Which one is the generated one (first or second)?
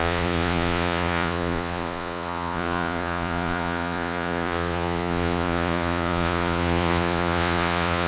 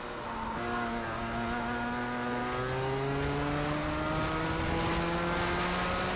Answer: first